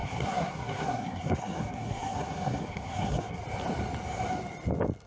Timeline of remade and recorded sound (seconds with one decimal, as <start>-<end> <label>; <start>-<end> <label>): 0.0-3.4 remade; 3.4-5.1 recorded